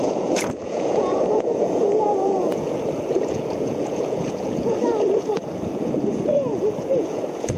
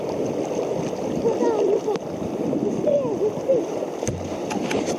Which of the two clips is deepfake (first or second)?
first